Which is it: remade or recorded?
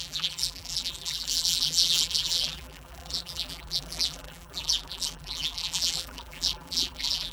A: remade